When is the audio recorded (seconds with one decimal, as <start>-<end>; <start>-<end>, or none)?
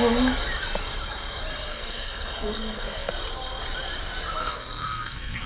0.0-1.7; 3.1-4.4